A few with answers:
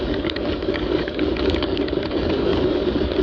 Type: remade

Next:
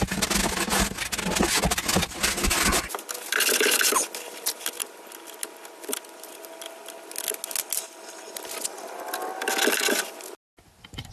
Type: recorded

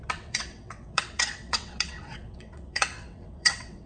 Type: remade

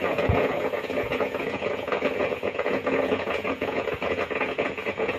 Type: remade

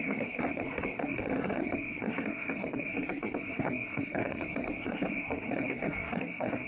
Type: remade